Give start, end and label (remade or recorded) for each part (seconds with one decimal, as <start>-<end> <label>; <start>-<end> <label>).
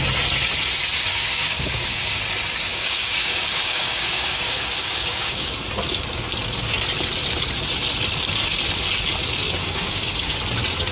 0.0-1.1 recorded; 1.1-2.2 remade; 2.2-2.7 recorded; 2.7-5.5 remade; 5.5-9.6 recorded; 9.6-10.4 remade; 10.4-10.9 recorded